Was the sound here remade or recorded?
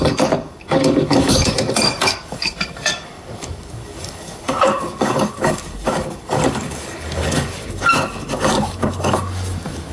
remade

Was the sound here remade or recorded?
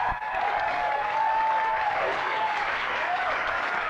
remade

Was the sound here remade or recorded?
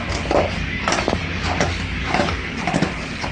remade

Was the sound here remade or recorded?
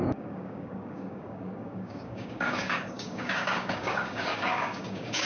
remade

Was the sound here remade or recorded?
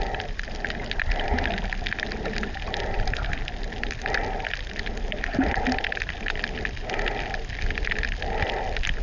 recorded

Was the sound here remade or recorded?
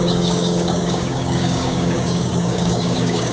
remade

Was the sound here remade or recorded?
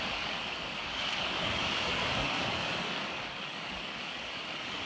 remade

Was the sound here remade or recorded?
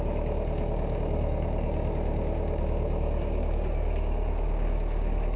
remade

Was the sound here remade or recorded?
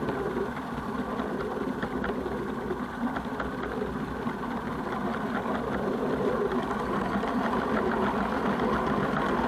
recorded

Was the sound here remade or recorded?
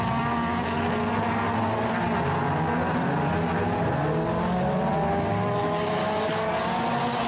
recorded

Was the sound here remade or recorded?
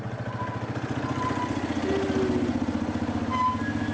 recorded